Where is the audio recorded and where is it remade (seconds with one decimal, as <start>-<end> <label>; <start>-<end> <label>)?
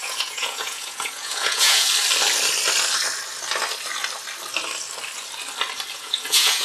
0.0-1.9 remade; 1.9-5.9 recorded; 5.9-6.6 remade